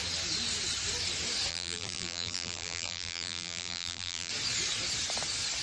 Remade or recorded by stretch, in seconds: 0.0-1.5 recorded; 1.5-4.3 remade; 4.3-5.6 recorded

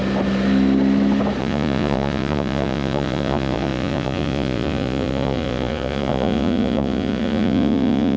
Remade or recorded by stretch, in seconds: 0.0-1.4 recorded; 1.4-8.2 remade

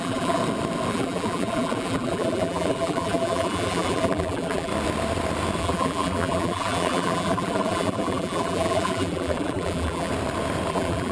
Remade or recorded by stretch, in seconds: 0.0-0.4 remade; 0.4-0.9 recorded; 0.9-4.7 remade; 4.7-5.6 recorded; 5.6-10.1 remade; 10.1-10.7 recorded; 10.7-11.1 remade

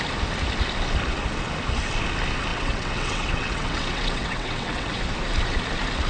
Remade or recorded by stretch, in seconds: 0.0-2.5 recorded; 2.5-5.0 remade; 5.0-6.1 recorded

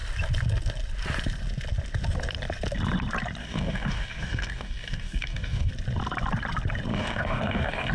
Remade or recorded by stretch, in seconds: 0.0-3.4 recorded; 3.4-5.7 remade; 5.7-6.9 recorded; 6.9-7.9 remade

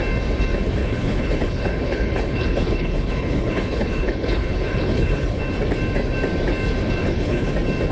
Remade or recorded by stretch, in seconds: 0.0-0.8 recorded; 0.8-5.4 remade; 5.4-7.0 recorded; 7.0-7.5 remade; 7.5-7.9 recorded

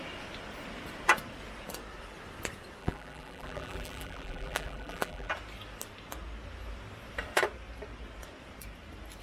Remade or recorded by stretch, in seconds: 0.0-2.8 recorded; 2.8-5.3 remade; 5.3-9.2 recorded

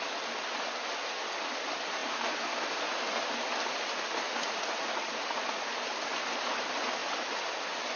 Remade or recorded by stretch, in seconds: 0.0-3.7 recorded; 3.7-5.7 remade; 5.7-8.0 recorded